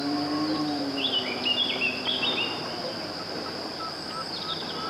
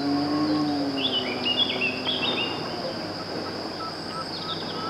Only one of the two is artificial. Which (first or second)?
first